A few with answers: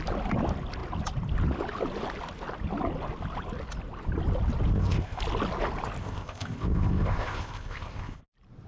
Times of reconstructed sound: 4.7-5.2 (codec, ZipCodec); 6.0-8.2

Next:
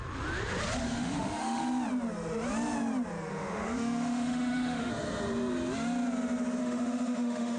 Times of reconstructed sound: 0.8-1.6 (autoencoder, DAC-VAE); 3.3-4.9; 6.6-7.6

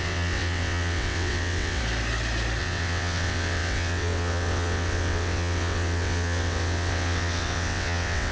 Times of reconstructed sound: 0.0-1.8 (vocoder, WaveNeXt); 2.6-8.3

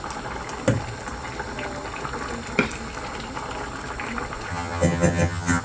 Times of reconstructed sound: 4.5-5.6 (vocoder, HiFi-GAN)

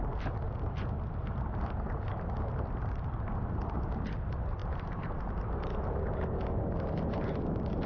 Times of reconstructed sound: none

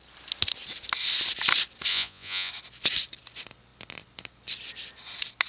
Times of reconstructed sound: 1.9-2.5 (vocoder, Vocos)